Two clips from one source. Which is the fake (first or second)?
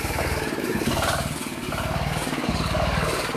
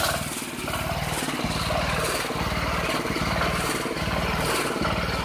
first